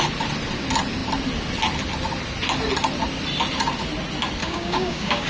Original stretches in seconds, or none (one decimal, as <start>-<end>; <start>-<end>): 0.0-4.4